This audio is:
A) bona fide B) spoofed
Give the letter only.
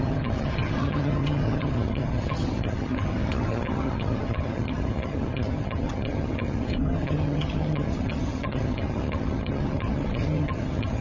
B